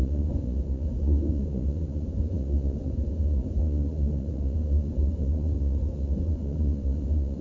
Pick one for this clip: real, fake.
fake